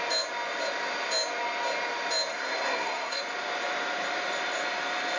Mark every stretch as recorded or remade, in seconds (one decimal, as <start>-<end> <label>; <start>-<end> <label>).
0.0-2.3 recorded; 2.3-3.2 remade; 3.2-5.2 recorded